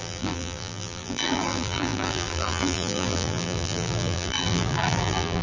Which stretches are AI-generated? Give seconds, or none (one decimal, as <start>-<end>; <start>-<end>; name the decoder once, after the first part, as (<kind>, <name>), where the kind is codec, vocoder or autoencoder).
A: 0.0-5.4 (vocoder, BigVGAN v2)